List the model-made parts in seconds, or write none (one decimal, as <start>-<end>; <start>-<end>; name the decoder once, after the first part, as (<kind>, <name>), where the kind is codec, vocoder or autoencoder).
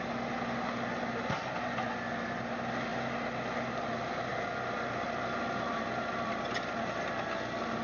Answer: 4.3-6.4 (vocoder, BigVGAN v2)